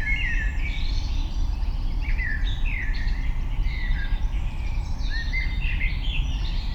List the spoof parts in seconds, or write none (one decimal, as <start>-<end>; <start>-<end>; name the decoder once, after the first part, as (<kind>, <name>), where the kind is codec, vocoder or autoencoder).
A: 1.4-3.1 (vocoder, BigVGAN v2); 3.6-5.9